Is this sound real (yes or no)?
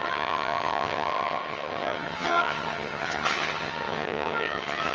no